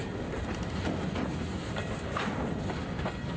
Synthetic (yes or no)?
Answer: no